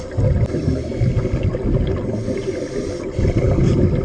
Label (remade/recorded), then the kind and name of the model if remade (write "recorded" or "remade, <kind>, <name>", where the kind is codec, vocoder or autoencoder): recorded